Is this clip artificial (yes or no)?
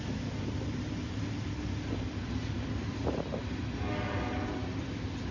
no